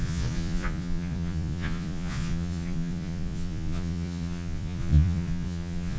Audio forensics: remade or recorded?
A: remade